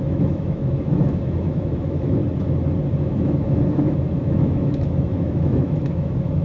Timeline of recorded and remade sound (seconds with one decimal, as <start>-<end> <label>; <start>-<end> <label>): 0.0-2.2 remade; 2.2-3.0 recorded; 3.0-6.4 remade